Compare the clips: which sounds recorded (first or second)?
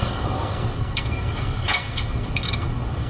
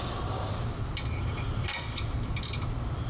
second